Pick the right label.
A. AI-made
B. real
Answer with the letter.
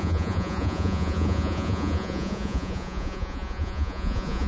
A